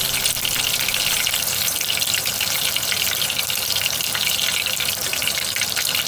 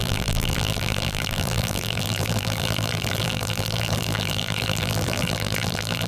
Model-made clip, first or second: second